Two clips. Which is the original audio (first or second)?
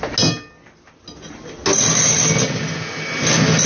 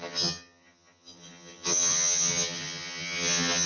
first